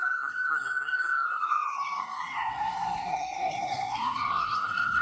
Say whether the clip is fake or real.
fake